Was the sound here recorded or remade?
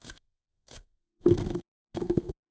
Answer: remade